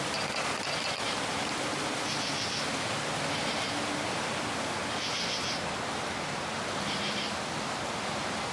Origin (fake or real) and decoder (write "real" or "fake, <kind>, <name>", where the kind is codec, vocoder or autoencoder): real